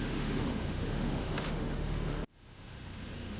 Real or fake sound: fake